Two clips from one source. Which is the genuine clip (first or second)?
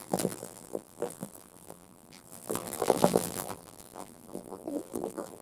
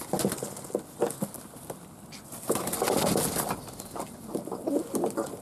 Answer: second